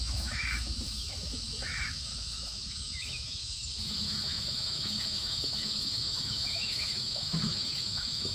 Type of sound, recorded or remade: remade